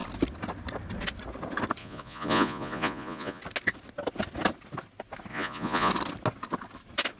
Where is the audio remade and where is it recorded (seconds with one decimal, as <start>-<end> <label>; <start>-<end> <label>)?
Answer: 0.0-1.8 recorded; 1.8-3.4 remade; 3.4-5.3 recorded; 5.3-5.9 remade; 5.9-7.2 recorded